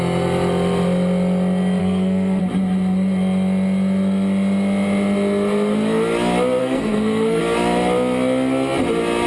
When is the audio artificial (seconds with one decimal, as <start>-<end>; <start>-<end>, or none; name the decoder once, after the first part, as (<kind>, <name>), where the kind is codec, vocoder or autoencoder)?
1.8-2.4 (codec, SNAC); 6.6-7.4